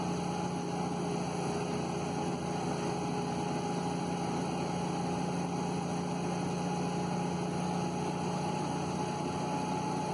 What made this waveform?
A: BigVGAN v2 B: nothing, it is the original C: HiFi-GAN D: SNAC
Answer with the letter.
B